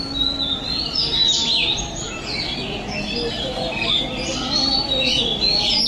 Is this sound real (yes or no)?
yes